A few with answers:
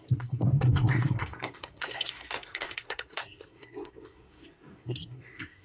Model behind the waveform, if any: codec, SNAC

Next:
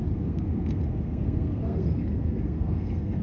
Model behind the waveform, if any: codec, SNAC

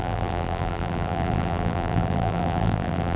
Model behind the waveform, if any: vocoder, BigVGAN v2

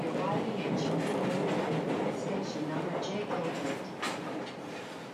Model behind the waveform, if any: none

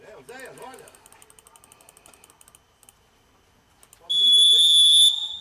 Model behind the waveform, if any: none